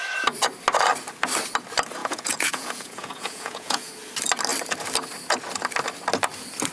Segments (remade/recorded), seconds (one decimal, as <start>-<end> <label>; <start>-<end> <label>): 0.0-2.0 recorded; 2.0-3.9 remade; 3.9-6.7 recorded